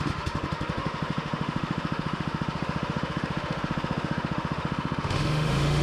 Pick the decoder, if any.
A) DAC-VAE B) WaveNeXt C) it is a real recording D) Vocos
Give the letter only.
A